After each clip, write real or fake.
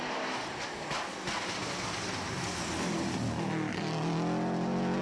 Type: real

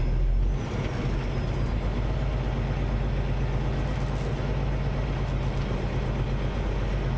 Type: real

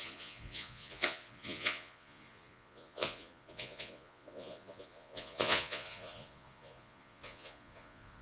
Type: fake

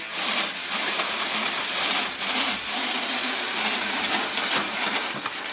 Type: real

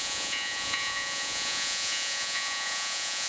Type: fake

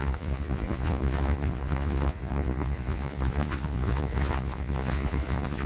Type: fake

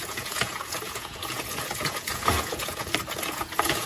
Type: fake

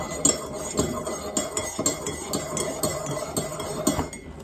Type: real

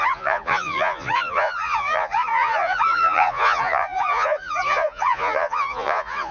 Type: fake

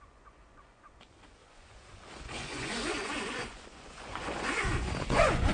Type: fake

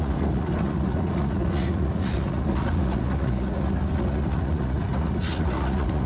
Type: fake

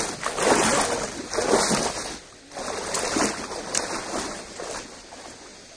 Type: real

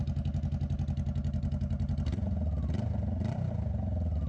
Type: real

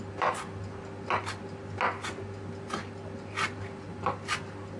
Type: real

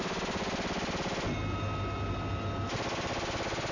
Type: real